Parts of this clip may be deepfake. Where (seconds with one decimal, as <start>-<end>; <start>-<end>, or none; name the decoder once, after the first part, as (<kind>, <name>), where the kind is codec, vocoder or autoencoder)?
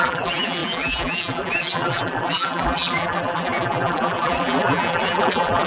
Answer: 0.0-5.7 (vocoder, BigVGAN v2)